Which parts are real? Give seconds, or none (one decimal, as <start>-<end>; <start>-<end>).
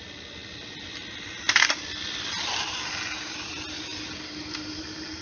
0.0-5.2